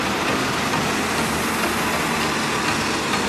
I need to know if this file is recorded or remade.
recorded